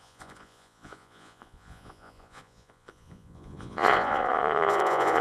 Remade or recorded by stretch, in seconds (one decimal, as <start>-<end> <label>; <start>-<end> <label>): 0.0-5.2 remade